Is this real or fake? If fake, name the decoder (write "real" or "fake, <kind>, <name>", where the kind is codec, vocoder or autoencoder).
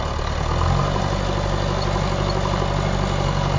real